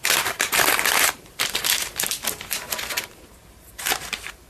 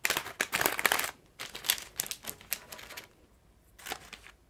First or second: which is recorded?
second